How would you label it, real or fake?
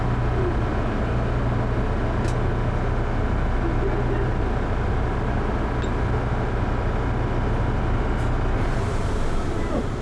real